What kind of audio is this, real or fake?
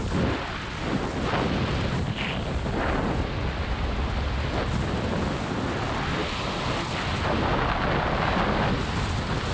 real